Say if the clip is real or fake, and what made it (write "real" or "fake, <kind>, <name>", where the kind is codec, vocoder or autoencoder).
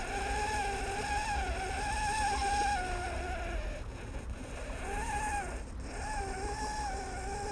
real